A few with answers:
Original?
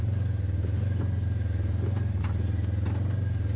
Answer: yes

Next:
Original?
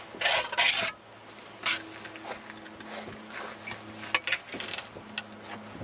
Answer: yes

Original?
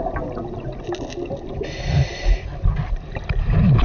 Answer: yes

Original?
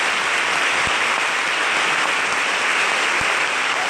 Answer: yes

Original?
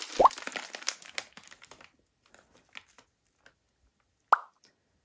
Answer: yes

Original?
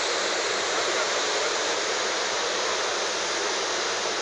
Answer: yes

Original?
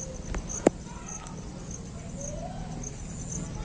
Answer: yes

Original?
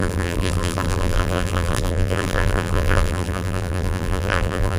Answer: no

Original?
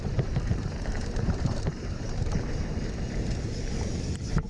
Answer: no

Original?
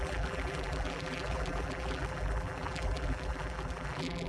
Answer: no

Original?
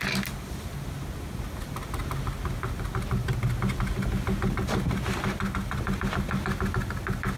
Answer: yes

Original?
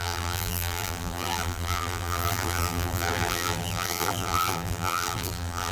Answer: no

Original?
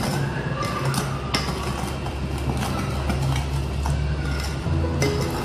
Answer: yes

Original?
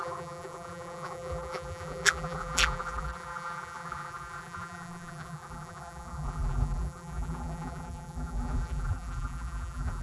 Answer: no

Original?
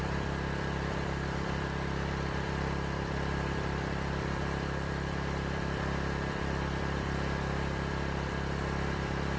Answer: no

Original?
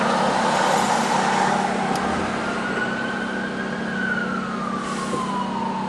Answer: yes